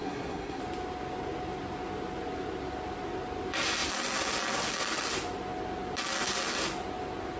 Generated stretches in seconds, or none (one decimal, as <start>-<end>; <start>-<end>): 0.0-0.6